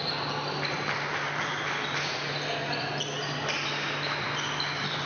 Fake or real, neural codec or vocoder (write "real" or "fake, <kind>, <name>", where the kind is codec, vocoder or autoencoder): real